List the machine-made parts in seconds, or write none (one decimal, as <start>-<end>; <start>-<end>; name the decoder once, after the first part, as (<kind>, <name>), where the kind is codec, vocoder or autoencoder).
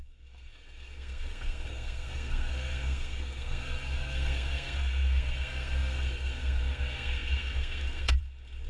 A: 0.0-8.7 (codec, SNAC)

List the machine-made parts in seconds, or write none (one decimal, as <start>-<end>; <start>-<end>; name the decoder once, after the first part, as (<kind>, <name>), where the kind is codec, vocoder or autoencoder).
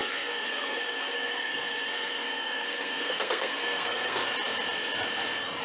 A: 0.0-4.2 (codec, SNAC)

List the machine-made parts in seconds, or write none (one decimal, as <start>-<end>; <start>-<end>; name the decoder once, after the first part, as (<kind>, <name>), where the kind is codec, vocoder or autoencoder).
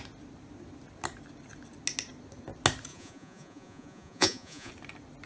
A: 2.9-4.7 (vocoder, Vocos)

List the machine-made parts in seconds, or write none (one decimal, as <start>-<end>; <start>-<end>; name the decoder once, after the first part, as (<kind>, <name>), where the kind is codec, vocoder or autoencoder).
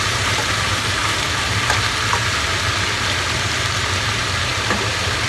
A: 0.0-1.0 (vocoder, BigVGAN v2); 4.2-5.3